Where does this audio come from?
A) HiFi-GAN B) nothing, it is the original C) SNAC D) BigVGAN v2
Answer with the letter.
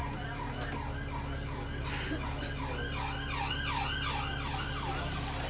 B